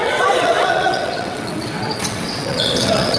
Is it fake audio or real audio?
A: fake